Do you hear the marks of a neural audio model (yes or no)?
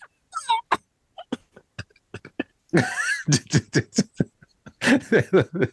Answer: no